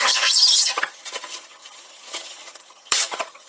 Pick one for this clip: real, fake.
fake